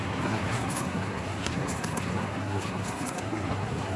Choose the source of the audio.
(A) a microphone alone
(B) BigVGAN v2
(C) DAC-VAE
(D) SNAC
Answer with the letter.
D